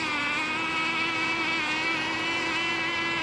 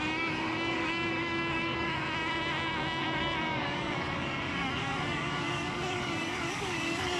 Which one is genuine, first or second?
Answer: first